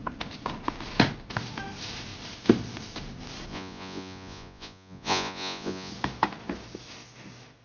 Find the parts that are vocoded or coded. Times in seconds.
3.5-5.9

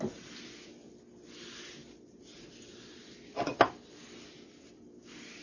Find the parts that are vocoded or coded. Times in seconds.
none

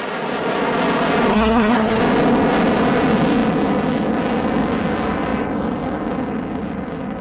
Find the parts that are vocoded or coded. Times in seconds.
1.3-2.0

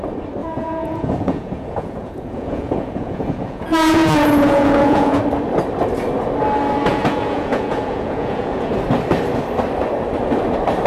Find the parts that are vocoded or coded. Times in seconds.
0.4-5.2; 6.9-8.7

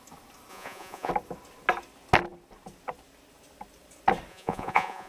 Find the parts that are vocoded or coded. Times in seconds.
0.5-1.1; 4.3-5.1

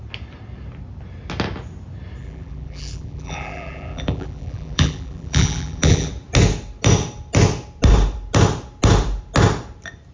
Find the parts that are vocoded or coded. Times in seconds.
2.2-6.1